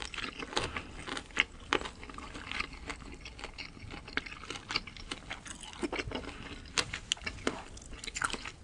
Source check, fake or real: real